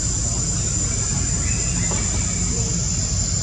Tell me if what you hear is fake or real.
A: real